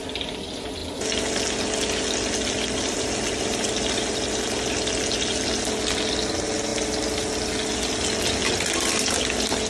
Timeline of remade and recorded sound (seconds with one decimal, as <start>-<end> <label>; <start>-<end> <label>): 0.0-9.7 recorded